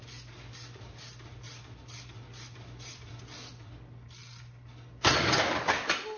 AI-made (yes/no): no